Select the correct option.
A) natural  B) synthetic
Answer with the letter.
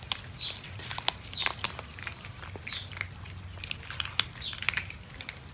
A